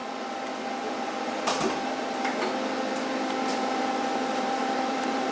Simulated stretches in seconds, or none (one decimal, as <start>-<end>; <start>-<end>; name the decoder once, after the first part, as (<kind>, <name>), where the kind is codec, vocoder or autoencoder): 3.5-5.3 (vocoder, BigVGAN v2)